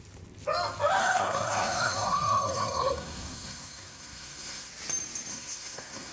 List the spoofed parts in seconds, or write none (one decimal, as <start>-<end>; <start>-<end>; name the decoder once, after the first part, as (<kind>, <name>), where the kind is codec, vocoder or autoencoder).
1.0-4.7 (codec, SNAC); 5.3-6.1